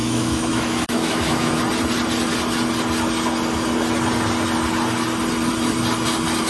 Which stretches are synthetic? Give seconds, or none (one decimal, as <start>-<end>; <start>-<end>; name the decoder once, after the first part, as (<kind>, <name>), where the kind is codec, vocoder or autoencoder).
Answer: 0.0-1.6 (autoencoder, DAC-VAE)